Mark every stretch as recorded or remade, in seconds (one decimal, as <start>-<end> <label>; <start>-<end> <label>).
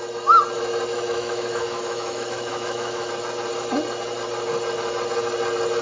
0.0-0.9 recorded; 0.9-3.1 remade; 3.1-5.8 recorded